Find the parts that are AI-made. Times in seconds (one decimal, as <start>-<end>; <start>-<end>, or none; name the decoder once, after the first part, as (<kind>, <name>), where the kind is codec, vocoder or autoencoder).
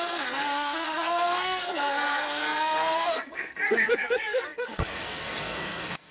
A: 0.0-6.1 (codec, SNAC)